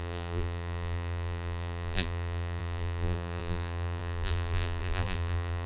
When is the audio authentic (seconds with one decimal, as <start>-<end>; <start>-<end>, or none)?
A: none